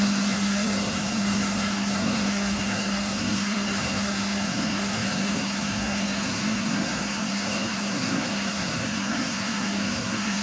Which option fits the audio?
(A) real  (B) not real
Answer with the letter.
B